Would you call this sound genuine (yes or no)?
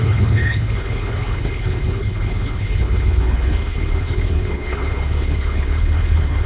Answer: no